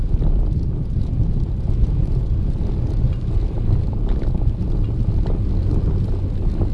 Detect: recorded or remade recorded